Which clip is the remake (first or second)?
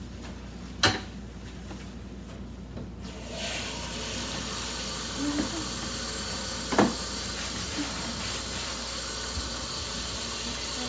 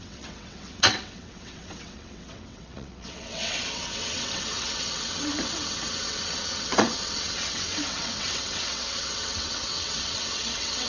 second